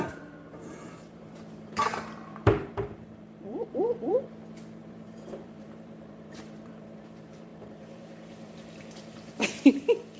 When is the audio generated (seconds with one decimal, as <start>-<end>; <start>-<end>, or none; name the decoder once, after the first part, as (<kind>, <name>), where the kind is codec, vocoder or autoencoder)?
0.0-4.1 (vocoder, BigVGAN v2); 4.8-10.2